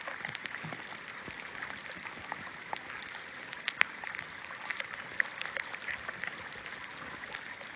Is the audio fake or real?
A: real